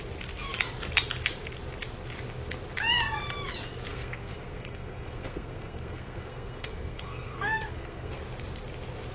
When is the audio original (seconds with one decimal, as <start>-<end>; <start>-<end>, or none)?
0.0-3.9; 8.2-9.1